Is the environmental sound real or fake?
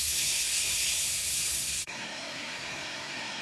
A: fake